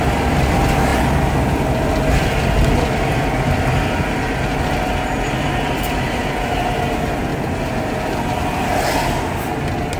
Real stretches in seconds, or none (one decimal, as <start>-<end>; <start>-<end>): 0.0-10.0